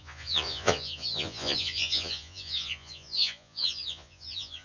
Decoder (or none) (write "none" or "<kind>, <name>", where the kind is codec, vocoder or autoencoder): vocoder, Vocos